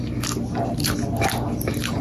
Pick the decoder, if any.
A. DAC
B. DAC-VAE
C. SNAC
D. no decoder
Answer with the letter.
D